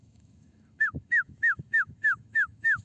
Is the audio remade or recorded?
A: remade